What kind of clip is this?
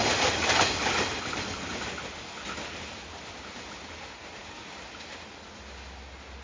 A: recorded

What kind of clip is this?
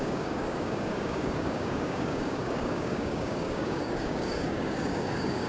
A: remade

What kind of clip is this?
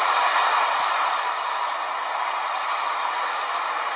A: recorded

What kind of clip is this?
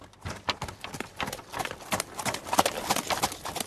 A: recorded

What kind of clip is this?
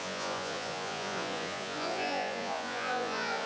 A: remade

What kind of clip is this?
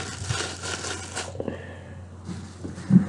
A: recorded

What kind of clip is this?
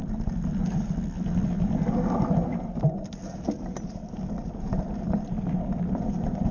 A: recorded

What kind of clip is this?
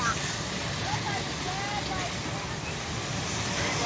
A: recorded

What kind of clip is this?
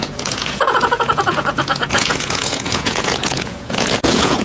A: remade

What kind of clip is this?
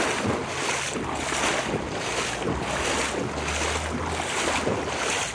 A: recorded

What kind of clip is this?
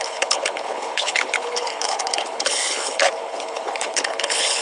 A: remade